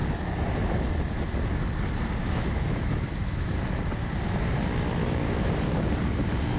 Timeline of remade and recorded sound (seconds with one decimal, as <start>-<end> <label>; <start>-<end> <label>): 0.0-2.2 recorded; 2.2-3.5 remade; 3.5-5.0 recorded; 5.0-5.5 remade; 5.5-6.6 recorded